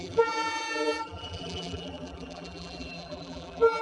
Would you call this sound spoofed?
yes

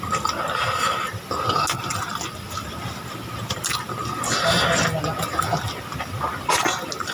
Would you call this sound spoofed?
no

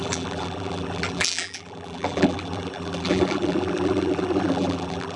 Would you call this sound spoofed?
yes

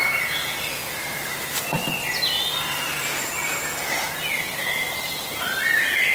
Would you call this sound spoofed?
no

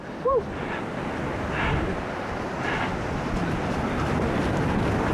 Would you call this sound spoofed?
no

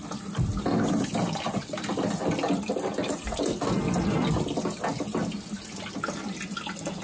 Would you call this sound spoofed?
no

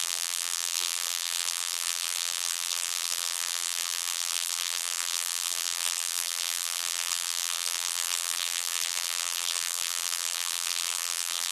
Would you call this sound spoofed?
yes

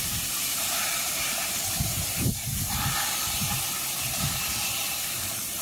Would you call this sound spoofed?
yes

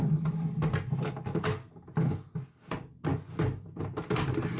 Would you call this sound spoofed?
no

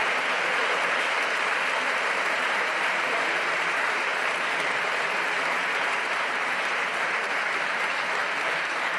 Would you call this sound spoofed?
yes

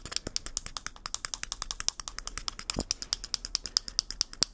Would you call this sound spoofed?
no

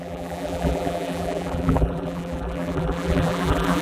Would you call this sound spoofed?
yes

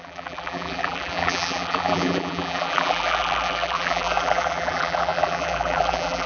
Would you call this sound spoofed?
yes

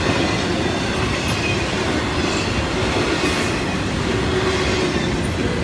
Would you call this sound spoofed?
no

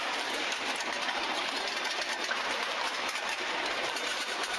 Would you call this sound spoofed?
yes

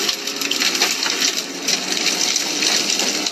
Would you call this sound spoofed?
no